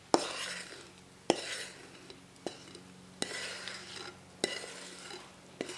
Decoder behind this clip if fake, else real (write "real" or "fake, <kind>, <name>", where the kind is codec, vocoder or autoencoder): real